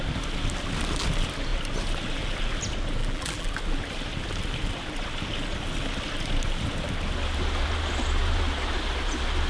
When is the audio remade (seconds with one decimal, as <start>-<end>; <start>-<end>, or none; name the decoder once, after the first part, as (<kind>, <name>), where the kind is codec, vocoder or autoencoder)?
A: 3.0-3.5 (vocoder, BigVGAN v2)